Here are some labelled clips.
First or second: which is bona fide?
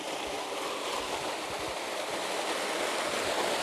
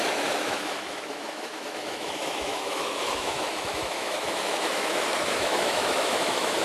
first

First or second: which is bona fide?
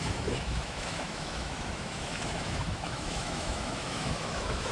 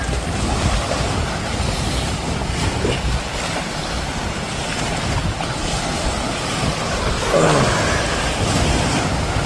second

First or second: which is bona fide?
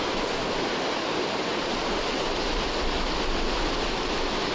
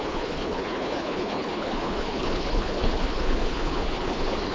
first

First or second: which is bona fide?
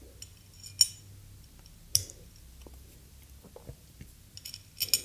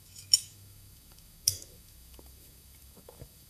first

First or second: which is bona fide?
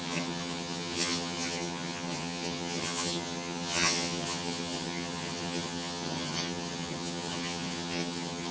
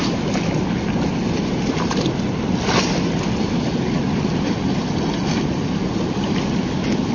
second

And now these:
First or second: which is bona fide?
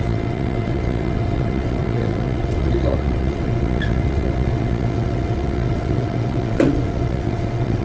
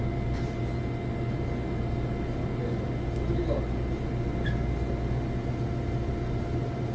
second